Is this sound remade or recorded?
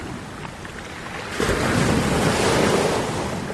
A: recorded